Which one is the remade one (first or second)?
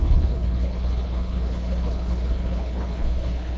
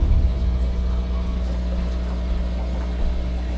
first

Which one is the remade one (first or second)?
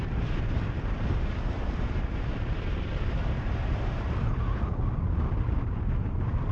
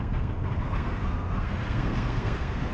second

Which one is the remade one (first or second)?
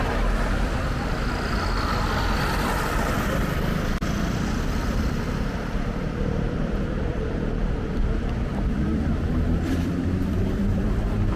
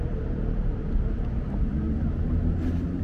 first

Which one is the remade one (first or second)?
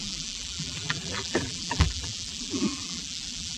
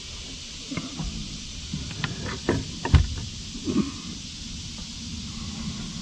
first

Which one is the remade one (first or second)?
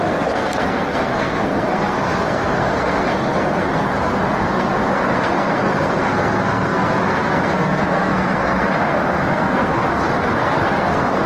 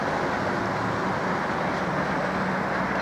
first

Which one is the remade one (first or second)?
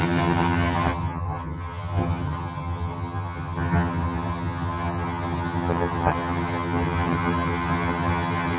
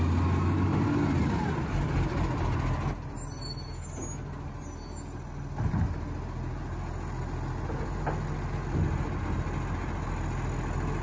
first